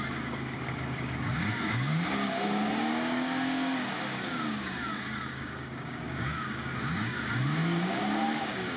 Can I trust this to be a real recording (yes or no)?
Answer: no